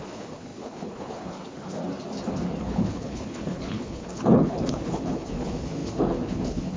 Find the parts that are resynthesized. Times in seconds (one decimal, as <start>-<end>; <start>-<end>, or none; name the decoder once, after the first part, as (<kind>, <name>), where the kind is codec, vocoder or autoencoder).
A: 0.0-1.8 (codec, HILCodec); 2.6-6.8